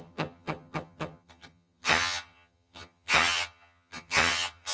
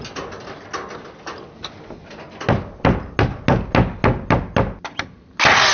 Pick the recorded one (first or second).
second